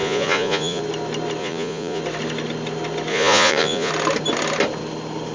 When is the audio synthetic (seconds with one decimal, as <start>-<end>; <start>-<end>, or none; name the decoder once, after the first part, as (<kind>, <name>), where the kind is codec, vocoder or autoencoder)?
0.0-0.8 (vocoder, Vocos); 1.4-2.0; 3.1-3.9